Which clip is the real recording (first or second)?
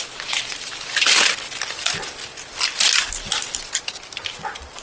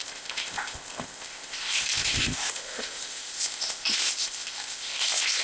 first